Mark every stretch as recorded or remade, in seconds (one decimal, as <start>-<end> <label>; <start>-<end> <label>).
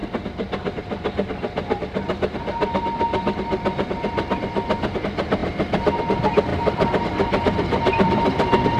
0.0-5.4 recorded; 5.4-6.0 remade; 6.0-6.5 recorded; 6.5-8.8 remade